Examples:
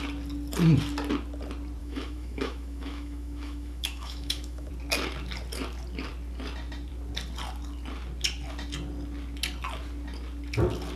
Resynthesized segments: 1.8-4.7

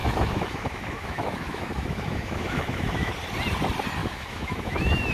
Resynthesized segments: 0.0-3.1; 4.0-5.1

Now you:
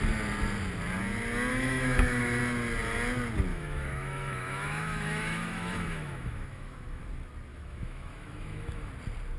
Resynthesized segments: 1.5-2.4; 3.5-7.0; 7.5-8.9

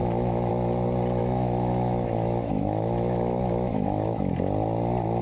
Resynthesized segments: 0.0-0.5; 1.2-4.3

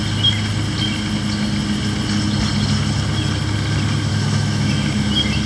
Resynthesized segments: 4.1-4.7

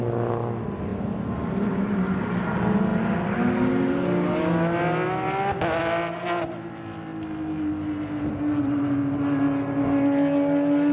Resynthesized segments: none

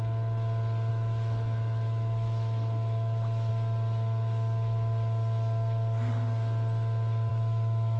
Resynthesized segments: 0.9-3.5; 7.3-8.0

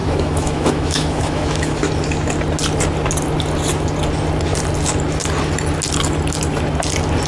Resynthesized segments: 0.0-1.9